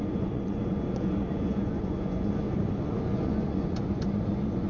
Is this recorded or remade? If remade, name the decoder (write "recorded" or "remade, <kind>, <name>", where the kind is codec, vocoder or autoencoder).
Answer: remade, vocoder, Vocos